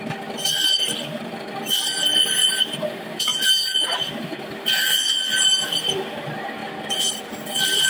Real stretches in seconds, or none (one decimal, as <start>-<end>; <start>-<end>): 3.3-4.8; 6.6-7.1